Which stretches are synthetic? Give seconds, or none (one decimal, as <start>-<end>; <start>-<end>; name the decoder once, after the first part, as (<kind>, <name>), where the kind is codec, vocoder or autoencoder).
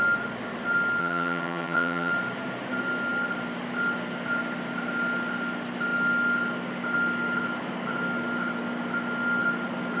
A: 1.0-2.1 (vocoder, HiFi-GAN)